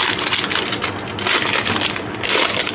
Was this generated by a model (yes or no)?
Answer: no